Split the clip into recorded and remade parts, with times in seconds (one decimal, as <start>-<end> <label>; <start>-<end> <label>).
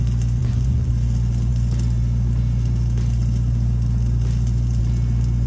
0.0-0.4 recorded; 0.4-0.9 remade; 0.9-5.5 recorded